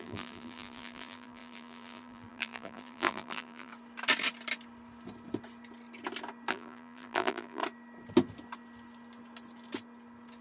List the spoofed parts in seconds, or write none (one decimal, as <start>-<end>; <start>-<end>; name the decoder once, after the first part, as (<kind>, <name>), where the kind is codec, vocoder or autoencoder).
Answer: 0.0-3.7 (vocoder, BigVGAN v2); 6.5-7.6